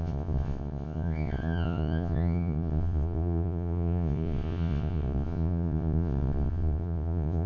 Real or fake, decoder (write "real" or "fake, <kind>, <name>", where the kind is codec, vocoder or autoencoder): fake, vocoder, Vocos